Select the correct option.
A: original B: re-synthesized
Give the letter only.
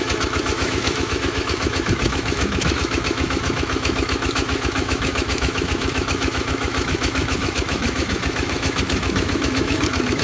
B